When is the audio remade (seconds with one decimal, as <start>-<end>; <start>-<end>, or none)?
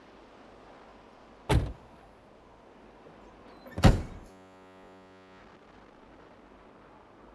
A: 4.3-5.4